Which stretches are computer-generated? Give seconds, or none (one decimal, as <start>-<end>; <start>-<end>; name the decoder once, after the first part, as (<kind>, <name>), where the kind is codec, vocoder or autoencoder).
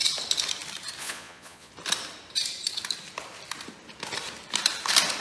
1.0-1.7 (vocoder, Vocos)